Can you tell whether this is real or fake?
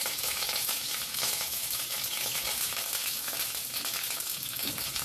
fake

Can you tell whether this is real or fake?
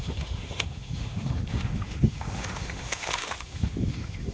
fake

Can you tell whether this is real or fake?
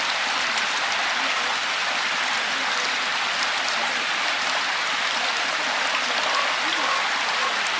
real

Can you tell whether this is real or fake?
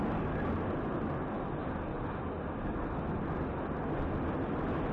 real